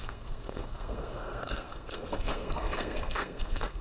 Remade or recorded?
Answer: remade